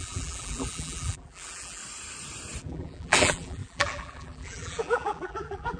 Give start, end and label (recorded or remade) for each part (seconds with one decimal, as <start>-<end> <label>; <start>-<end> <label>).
0.0-1.8 remade; 1.8-2.6 recorded; 2.6-5.8 remade